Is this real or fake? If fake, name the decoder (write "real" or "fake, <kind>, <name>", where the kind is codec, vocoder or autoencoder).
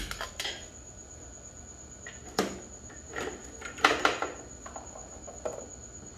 real